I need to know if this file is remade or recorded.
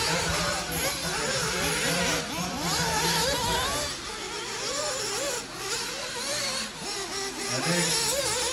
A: recorded